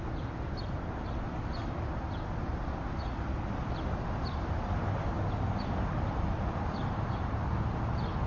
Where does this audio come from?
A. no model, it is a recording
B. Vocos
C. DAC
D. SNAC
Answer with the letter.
A